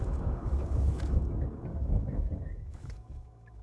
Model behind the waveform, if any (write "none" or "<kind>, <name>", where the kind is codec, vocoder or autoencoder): codec, DAC